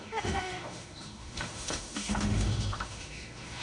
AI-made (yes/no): yes